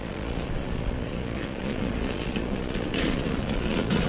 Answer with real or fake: fake